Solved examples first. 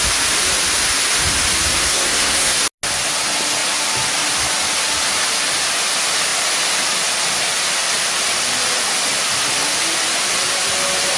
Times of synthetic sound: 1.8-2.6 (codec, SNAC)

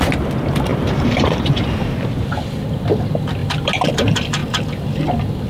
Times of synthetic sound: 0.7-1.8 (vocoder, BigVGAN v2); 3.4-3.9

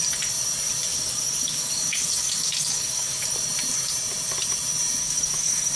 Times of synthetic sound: 0.9-3.2 (codec, DAC); 5.0-5.8

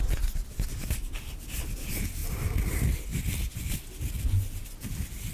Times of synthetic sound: none